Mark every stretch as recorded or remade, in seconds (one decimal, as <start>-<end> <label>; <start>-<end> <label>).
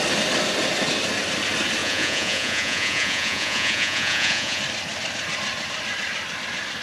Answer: 0.0-1.8 recorded; 1.8-4.6 remade; 4.6-6.8 recorded